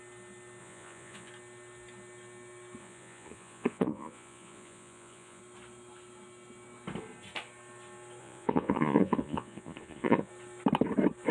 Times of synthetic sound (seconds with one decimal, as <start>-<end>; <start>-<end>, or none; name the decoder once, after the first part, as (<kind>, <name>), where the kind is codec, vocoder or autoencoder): 0.6-1.3 (vocoder, Vocos); 2.8-5.4; 8.2-10.3